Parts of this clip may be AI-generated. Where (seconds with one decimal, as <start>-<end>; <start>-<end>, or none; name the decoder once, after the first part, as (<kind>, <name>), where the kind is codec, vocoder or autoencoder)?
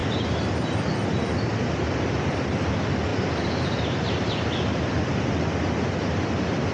3.1-4.8 (vocoder, BigVGAN v2)